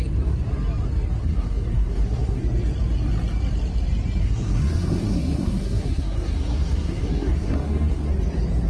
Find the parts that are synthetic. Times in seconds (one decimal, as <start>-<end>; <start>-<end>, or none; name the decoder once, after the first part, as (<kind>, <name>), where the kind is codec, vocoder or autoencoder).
1.2-2.4 (codec, SNAC); 4.2-8.1